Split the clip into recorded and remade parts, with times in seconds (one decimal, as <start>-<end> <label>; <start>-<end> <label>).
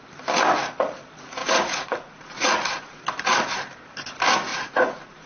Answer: 0.0-1.4 recorded; 1.4-3.0 remade; 3.0-4.5 recorded; 4.5-5.3 remade